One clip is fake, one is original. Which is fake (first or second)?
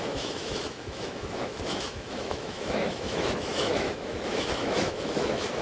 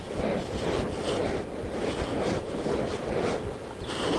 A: first